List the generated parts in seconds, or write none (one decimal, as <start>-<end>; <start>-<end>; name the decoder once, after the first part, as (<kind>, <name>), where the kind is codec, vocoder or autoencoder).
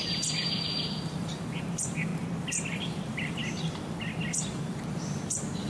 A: 0.0-2.1 (vocoder, BigVGAN v2); 2.8-3.4; 4.5-5.7